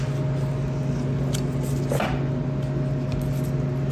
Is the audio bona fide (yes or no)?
yes